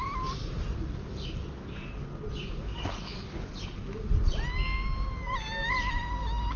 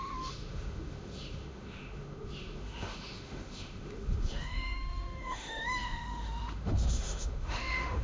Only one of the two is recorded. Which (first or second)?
first